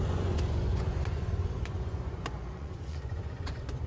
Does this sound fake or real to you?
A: fake